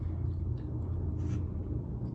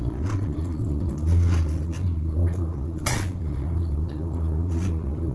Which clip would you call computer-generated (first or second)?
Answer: second